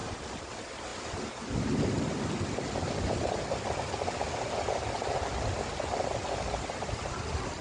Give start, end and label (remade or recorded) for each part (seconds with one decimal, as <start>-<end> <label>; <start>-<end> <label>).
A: 0.0-7.6 recorded